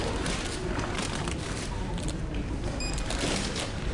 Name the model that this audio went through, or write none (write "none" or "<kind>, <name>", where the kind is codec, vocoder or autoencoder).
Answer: none